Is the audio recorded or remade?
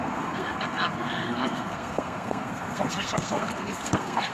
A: remade